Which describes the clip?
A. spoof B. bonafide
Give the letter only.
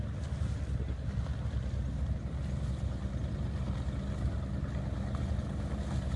B